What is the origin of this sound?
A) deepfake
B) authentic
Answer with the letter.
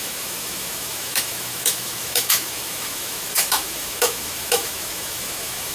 A